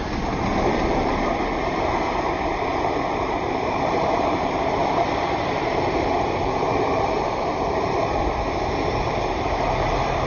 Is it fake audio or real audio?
fake